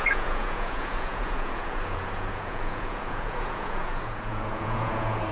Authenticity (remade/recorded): remade